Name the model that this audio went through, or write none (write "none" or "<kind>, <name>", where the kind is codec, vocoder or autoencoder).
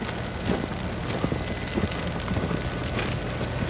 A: none